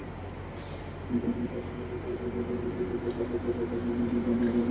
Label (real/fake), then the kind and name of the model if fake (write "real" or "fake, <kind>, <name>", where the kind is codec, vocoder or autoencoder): real